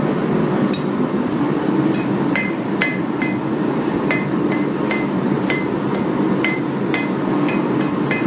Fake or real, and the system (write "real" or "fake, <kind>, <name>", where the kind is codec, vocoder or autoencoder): fake, vocoder, BigVGAN v2